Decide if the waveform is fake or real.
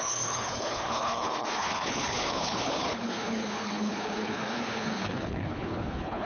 fake